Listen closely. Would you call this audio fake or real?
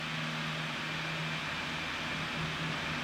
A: real